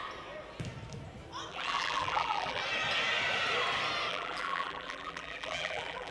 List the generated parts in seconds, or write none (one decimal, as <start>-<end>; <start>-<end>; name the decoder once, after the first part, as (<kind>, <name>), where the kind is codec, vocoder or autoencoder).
1.5-2.6 (vocoder, BigVGAN v2); 4.1-6.1